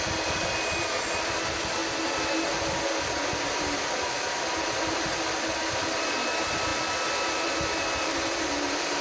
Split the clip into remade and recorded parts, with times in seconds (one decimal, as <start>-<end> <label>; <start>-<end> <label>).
0.0-9.0 recorded